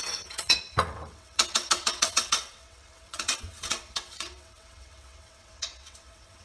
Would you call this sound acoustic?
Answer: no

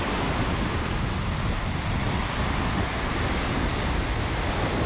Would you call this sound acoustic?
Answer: yes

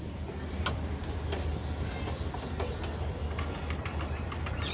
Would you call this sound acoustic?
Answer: yes